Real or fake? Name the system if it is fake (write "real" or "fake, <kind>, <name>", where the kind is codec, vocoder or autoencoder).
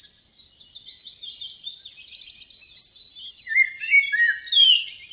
real